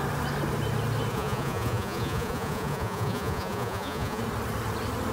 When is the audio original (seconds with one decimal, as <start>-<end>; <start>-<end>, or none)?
0.0-1.1; 4.2-5.1